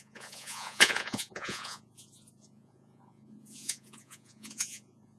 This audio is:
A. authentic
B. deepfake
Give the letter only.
B